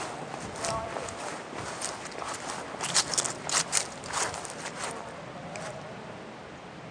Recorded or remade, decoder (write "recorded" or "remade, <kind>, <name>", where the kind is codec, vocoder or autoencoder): recorded